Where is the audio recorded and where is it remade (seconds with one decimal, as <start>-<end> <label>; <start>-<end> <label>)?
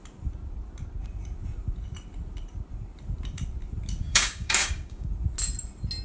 0.0-4.0 recorded; 4.0-5.1 remade; 5.1-6.0 recorded